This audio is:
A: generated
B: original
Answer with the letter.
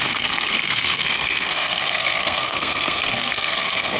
A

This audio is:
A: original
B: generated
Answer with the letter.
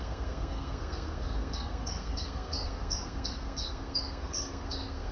B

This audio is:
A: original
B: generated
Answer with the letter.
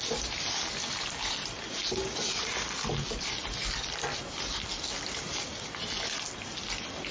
A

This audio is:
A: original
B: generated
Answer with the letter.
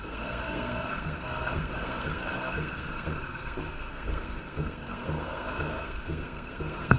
B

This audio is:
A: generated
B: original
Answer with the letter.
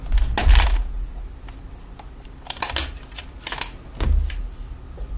B